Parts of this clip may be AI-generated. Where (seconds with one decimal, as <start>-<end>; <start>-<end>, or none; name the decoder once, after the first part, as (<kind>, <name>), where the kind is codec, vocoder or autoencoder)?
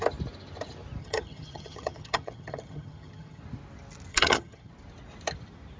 1.0-3.4 (vocoder, HiFi-GAN); 4.1-4.7